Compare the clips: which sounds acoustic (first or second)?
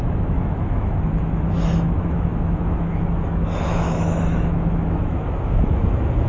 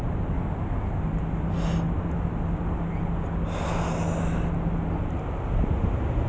second